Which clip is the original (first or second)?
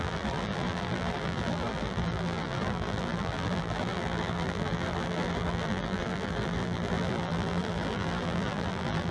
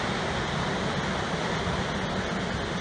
second